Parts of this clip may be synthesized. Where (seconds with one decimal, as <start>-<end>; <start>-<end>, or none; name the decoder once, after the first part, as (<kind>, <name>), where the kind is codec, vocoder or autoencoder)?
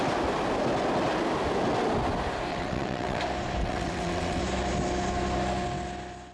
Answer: 2.5-3.2 (vocoder, WaveNeXt); 3.6-4.4